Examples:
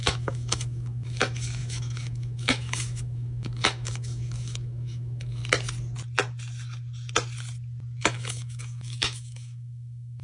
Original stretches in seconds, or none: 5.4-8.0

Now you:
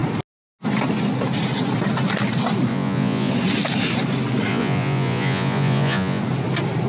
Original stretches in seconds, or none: 0.0-2.7; 3.3-4.5; 6.2-6.9

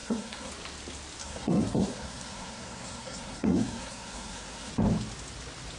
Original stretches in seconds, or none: 0.5-1.2; 4.7-5.8

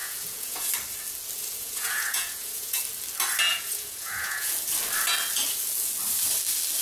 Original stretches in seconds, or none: 0.7-1.4; 2.8-3.5; 4.5-6.8

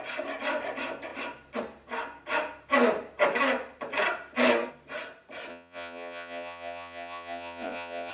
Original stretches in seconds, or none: 0.0-5.5

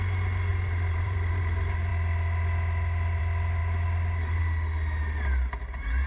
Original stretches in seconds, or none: 0.0-0.5; 1.4-6.1

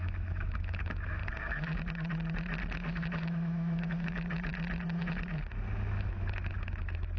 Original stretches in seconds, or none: 1.2-3.2; 4.5-6.1